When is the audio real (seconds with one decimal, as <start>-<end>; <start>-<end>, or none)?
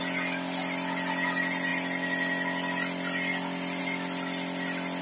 0.0-5.0